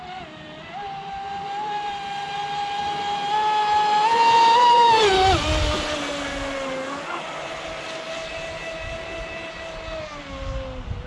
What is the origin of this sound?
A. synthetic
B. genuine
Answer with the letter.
B